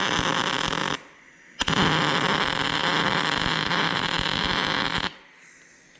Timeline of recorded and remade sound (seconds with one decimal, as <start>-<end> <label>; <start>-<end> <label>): 0.0-0.8 recorded; 0.8-4.4 remade; 4.4-6.0 recorded